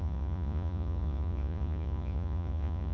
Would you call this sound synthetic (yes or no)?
yes